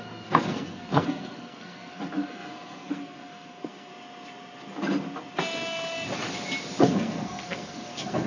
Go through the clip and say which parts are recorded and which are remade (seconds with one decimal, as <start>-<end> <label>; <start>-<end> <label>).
0.0-3.9 remade; 3.9-6.8 recorded; 6.8-8.3 remade